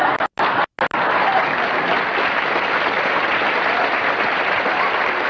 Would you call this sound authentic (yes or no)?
yes